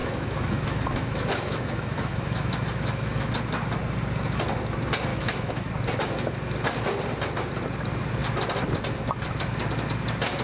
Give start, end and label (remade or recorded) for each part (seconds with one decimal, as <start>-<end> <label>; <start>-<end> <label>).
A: 0.0-3.3 remade; 3.3-5.1 recorded; 5.1-5.7 remade; 5.7-10.4 recorded